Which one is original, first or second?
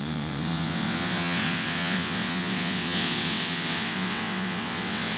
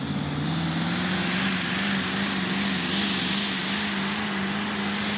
second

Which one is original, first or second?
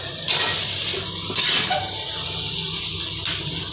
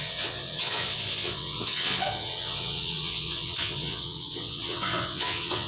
first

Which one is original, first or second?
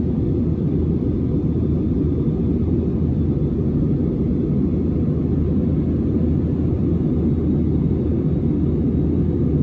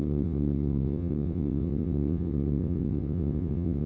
first